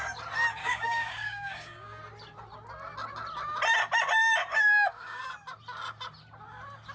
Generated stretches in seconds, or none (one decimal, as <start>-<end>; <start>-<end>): 0.6-2.0; 4.4-5.2